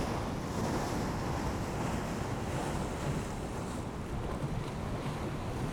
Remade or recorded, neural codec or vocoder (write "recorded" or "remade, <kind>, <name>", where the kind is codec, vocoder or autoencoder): recorded